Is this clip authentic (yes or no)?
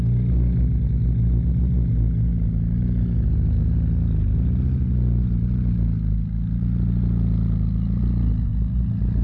yes